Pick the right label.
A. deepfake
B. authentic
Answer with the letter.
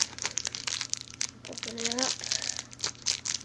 B